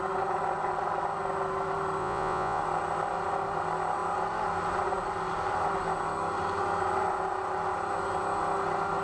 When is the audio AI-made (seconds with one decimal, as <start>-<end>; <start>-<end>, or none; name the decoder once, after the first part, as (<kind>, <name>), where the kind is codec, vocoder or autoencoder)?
2.0-2.6 (vocoder, Vocos)